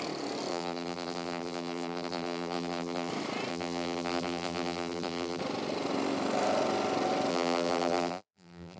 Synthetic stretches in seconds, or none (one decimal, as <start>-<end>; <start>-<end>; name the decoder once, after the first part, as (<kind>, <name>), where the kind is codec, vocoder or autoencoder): 0.5-3.1 (vocoder, BigVGAN v2); 3.5-5.4; 7.3-8.8